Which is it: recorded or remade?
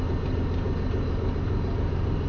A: recorded